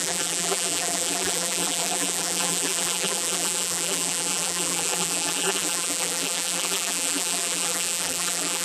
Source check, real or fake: fake